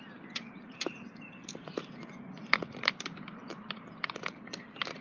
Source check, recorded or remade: remade